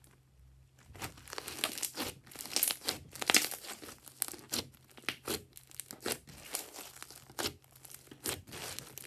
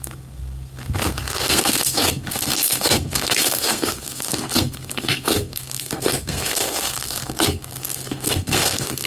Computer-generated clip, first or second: second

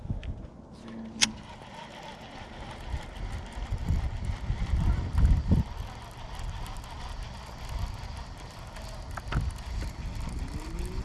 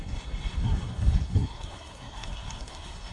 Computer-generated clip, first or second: second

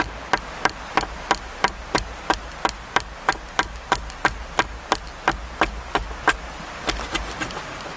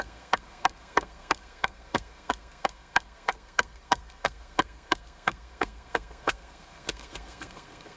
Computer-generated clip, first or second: second